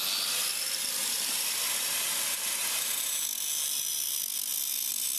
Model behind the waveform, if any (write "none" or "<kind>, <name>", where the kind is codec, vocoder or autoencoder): none